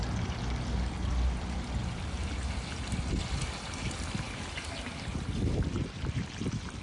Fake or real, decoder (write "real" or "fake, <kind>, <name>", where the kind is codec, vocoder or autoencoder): real